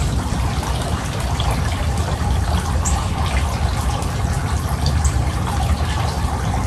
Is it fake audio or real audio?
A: fake